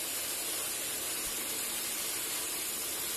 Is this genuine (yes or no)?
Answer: yes